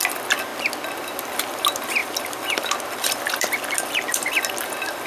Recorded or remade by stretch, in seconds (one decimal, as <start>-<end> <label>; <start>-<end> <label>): 0.0-0.5 remade; 0.5-1.0 recorded; 1.0-5.1 remade

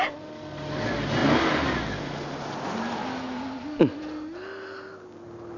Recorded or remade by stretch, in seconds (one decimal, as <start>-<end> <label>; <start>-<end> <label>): 0.0-5.6 recorded

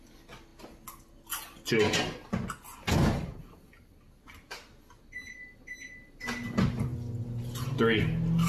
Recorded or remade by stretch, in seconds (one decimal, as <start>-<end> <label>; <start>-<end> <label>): 0.0-8.5 recorded